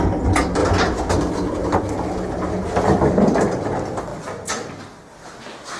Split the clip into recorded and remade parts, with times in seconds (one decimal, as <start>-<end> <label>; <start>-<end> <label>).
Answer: 0.0-5.8 recorded